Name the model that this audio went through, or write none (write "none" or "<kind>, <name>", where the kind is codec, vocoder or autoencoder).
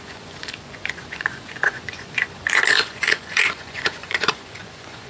vocoder, Vocos